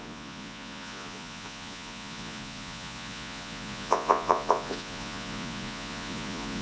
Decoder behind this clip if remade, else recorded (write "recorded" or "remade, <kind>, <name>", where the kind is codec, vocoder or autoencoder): remade, vocoder, Vocos